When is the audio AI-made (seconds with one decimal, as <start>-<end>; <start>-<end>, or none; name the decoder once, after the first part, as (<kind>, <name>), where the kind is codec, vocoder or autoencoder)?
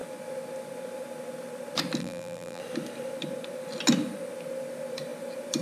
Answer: 2.0-2.6 (vocoder, BigVGAN v2)